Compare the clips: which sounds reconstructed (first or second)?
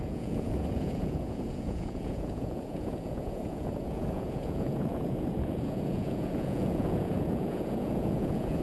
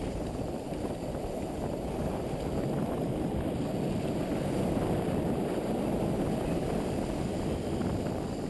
first